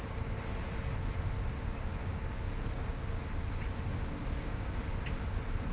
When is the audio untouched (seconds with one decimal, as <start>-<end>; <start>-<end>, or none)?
0.0-2.0; 3.0-3.9; 4.9-5.7